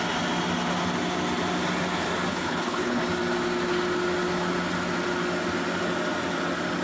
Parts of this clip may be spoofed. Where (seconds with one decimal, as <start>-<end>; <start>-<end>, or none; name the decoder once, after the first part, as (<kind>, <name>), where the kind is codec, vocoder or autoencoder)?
2.3-3.0 (codec, HILCodec)